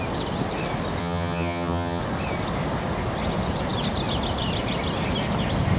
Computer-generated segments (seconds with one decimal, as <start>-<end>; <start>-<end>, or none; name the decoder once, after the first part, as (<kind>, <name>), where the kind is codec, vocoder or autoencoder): 1.0-2.0 (vocoder, HiFi-GAN)